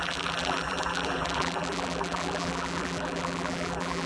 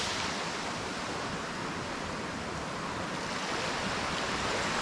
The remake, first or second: first